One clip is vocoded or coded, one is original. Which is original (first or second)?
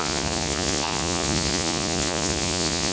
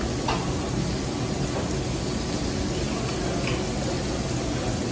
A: second